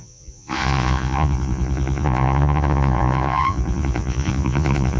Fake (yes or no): yes